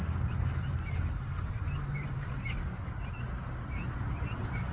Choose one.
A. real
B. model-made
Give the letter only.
A